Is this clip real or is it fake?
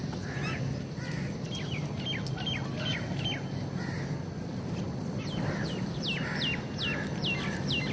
real